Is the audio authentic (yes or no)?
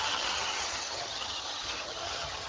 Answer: no